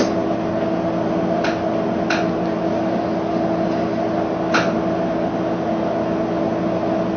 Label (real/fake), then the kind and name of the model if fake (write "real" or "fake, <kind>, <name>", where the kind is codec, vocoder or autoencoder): real